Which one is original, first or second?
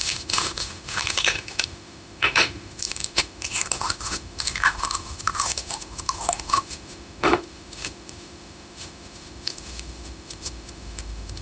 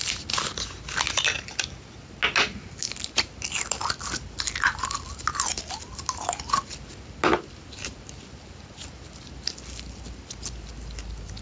second